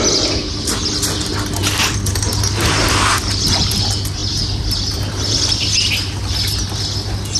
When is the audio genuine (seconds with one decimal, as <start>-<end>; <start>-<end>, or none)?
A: 0.0-1.6; 3.7-4.2; 5.6-7.4